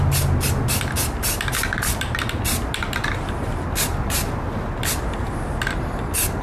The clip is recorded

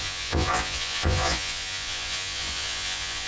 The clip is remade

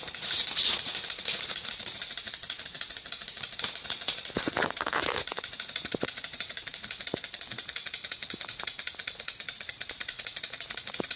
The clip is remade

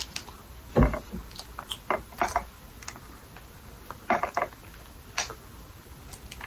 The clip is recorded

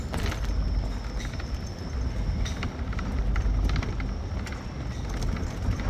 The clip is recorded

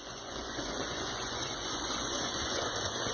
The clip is remade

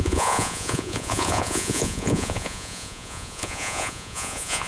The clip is remade